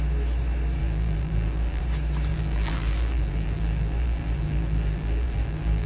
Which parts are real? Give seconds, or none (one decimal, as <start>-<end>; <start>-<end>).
0.0-0.8; 1.8-2.3